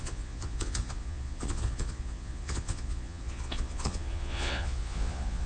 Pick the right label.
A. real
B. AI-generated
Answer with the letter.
B